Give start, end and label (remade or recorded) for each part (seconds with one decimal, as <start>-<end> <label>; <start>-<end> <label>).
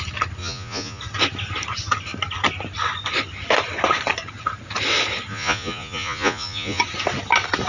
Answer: 0.0-0.4 recorded; 0.4-1.0 remade; 1.0-5.3 recorded; 5.3-6.8 remade; 6.8-7.7 recorded